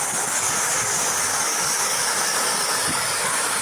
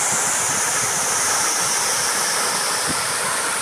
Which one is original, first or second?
second